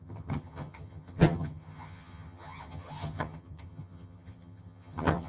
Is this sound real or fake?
fake